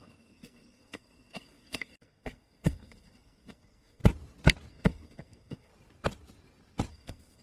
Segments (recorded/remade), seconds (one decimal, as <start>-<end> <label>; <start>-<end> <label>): 0.0-4.0 remade; 4.0-4.7 recorded; 4.7-5.7 remade; 5.7-6.9 recorded; 6.9-7.4 remade